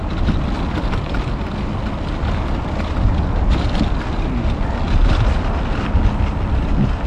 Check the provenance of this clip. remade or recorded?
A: recorded